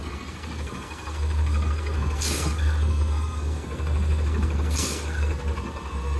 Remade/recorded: remade